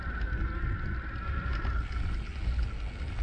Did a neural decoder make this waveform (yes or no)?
no